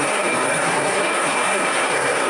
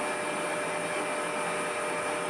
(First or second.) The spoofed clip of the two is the first